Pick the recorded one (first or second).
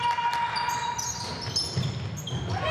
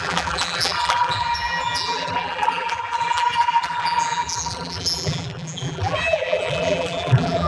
first